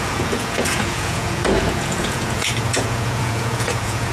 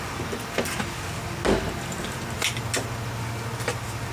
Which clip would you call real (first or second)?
second